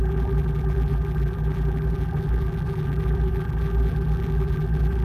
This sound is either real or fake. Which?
fake